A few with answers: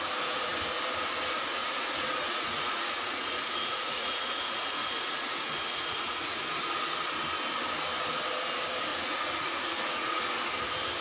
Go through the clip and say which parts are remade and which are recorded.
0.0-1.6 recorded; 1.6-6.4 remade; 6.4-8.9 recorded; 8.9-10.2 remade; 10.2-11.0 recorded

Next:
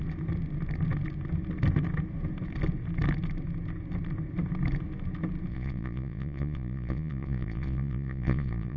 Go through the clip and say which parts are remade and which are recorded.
0.0-5.5 recorded; 5.5-8.8 remade